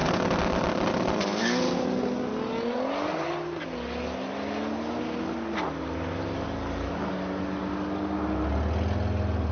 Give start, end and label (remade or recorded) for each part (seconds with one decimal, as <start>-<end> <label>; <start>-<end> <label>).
0.0-9.5 recorded